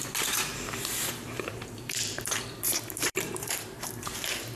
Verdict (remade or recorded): remade